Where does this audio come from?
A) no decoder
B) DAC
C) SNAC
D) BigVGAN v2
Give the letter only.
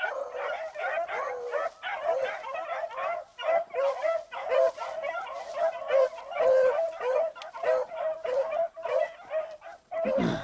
A